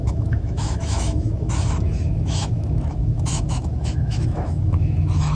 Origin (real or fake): fake